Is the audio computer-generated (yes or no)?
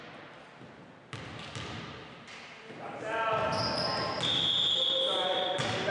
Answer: no